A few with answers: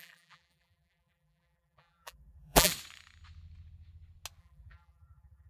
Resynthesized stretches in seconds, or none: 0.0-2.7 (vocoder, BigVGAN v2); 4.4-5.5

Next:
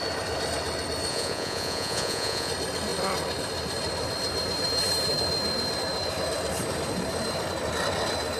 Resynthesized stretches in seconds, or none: 1.1-2.5 (vocoder, Vocos)

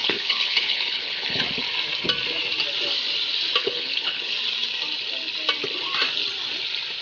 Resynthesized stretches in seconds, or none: 0.0-1.4 (codec, HILCodec); 3.6-4.3

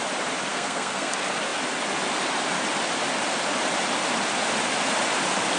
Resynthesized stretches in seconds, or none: 0.5-1.1 (codec, SNAC)

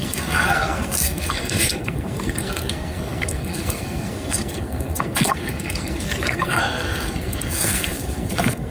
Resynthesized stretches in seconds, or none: 0.0-8.7 (codec, SNAC)

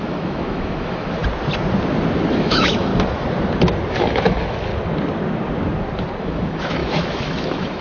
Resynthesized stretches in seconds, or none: 0.0-1.2 (autoencoder, DAC-VAE); 2.3-2.9; 3.9-4.7; 6.2-7.8

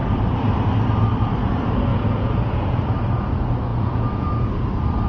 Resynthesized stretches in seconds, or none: 1.9-2.8 (vocoder, Vocos); 3.7-4.6